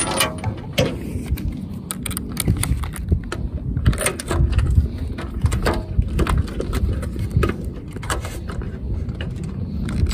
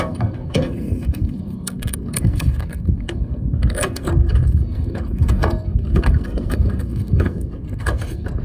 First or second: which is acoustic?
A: first